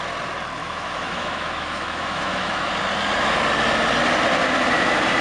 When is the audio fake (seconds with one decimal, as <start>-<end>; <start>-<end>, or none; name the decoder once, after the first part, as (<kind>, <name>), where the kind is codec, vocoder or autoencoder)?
0.6-2.7 (autoencoder, DAC-VAE)